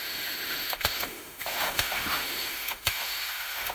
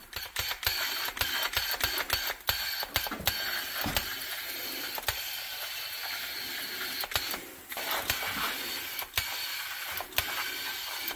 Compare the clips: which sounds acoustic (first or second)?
second